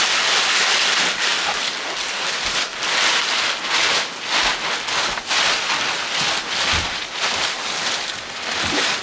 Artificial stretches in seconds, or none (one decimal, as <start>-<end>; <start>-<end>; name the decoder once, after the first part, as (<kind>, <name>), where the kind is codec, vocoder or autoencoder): 1.3-4.1 (vocoder, BigVGAN v2)